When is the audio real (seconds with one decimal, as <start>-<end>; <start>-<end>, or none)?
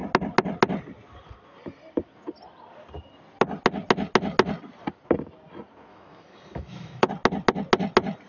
0.0-5.9; 7.1-8.3